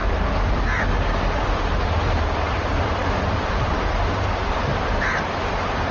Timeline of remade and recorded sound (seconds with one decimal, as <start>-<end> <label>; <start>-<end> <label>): 0.0-2.5 recorded; 2.5-5.9 remade